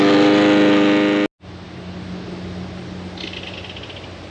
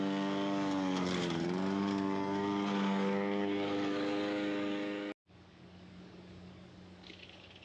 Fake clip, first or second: second